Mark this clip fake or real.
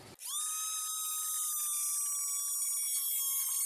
real